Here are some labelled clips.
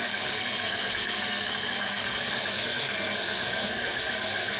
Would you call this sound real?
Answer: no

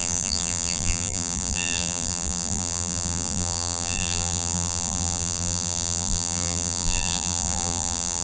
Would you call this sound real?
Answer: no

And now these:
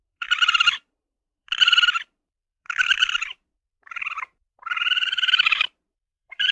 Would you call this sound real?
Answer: no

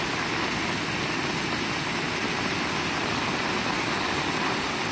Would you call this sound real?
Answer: yes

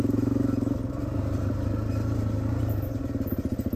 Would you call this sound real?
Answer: yes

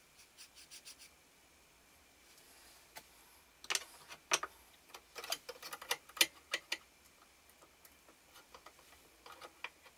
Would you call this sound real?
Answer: yes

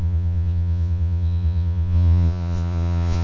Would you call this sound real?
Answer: no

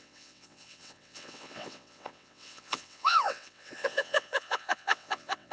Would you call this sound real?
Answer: no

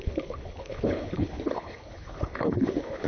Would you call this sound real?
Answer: no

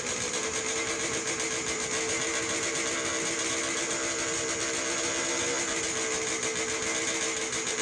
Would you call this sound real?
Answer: yes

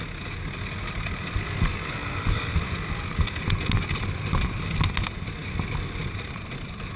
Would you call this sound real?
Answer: yes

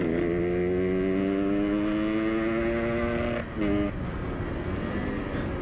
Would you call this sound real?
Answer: yes